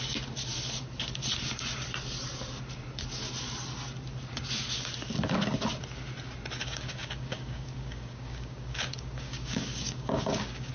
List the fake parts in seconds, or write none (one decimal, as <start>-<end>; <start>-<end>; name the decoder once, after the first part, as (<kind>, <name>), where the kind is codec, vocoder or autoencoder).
6.6-10.7 (codec, DAC)